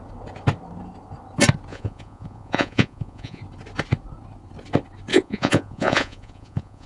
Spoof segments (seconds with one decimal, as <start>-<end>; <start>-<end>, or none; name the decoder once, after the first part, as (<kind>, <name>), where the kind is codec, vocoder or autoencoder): 1.7-3.4 (vocoder, Vocos); 5.1-6.9